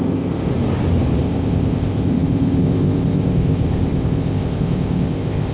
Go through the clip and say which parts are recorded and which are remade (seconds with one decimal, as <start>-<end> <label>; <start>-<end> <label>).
0.0-0.5 remade; 0.5-1.2 recorded; 1.2-5.5 remade